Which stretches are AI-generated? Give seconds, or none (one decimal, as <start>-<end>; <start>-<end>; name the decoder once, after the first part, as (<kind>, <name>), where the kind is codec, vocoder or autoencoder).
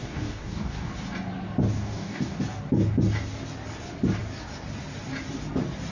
0.0-0.9 (codec, DAC); 1.7-2.4